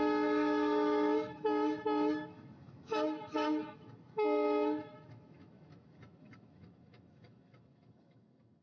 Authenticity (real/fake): fake